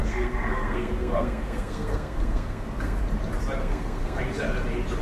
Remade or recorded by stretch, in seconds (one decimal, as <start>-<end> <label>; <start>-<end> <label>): 0.0-3.0 remade; 3.0-3.6 recorded; 3.6-4.2 remade; 4.2-5.0 recorded